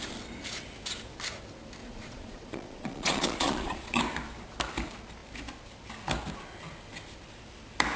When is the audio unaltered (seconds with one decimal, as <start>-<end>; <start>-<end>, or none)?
0.0-1.8; 4.0-8.0

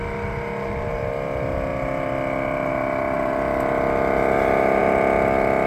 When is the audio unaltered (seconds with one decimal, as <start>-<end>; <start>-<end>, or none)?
0.0-5.7

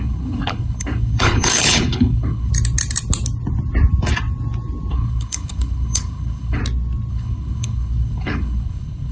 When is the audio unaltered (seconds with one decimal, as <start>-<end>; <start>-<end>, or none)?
2.5-4.9; 6.6-7.1

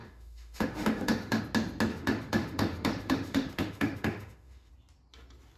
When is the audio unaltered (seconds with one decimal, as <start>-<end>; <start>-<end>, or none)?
1.4-1.9; 4.7-5.6

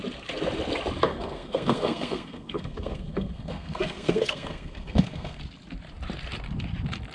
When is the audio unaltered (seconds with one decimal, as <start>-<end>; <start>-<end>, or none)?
0.0-1.1; 5.4-7.1